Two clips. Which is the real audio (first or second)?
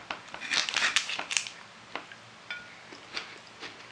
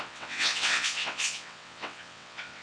first